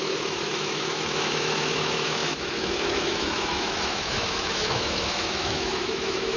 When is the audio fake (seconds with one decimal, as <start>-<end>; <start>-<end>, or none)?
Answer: 0.0-6.4